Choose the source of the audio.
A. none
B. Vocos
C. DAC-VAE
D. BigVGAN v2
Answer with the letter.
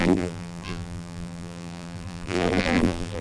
D